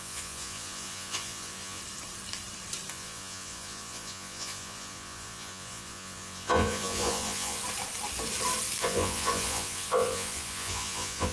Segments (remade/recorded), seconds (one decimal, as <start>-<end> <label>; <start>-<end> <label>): 0.0-1.8 remade; 1.8-2.9 recorded; 2.9-7.6 remade; 7.6-8.8 recorded; 8.8-11.3 remade